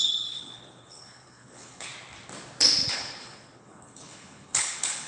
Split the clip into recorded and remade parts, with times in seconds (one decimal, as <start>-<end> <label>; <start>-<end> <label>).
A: 0.0-1.9 remade; 1.9-2.8 recorded; 2.8-5.1 remade

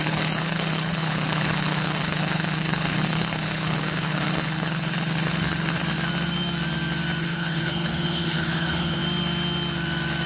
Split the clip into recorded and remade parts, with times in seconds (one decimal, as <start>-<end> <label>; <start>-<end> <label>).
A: 0.0-5.8 remade; 5.8-7.2 recorded; 7.2-9.0 remade; 9.0-10.3 recorded